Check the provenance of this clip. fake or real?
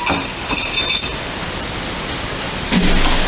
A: real